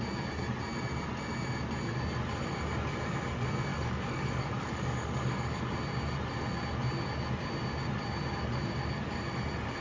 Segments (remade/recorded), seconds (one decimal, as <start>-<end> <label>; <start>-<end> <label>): 0.0-3.7 recorded; 3.7-5.7 remade; 5.7-9.8 recorded

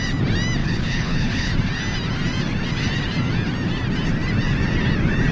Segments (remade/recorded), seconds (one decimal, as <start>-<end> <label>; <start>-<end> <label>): 0.0-0.6 recorded; 0.6-1.5 remade; 1.5-5.3 recorded